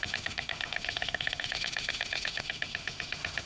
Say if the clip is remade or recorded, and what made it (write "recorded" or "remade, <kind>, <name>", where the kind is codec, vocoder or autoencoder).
remade, autoencoder, DAC-VAE